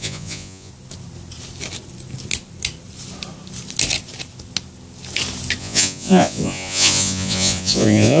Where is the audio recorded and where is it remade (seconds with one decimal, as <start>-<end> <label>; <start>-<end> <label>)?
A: 0.0-0.7 remade; 0.7-5.6 recorded; 5.6-8.2 remade